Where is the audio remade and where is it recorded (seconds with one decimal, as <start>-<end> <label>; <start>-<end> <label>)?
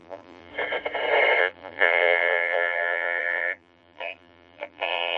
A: 0.0-0.5 remade; 0.5-1.4 recorded; 1.4-5.2 remade